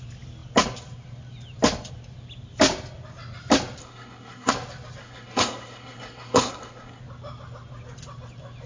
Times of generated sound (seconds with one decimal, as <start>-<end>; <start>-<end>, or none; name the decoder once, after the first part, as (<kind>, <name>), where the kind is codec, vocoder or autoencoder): 3.8-4.5 (codec, SNAC); 5.0-7.0